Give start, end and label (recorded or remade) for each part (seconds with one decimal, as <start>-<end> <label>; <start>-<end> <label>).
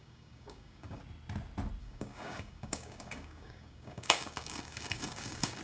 0.0-1.0 remade; 1.0-1.8 recorded; 1.8-5.6 remade